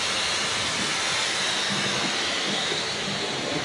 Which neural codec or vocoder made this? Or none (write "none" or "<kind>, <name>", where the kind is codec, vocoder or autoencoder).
none